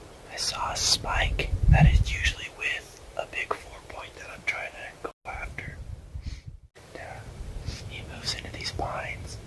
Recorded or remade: recorded